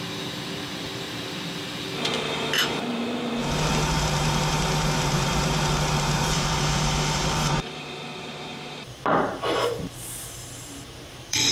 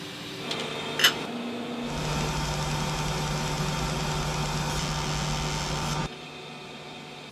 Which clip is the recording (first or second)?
second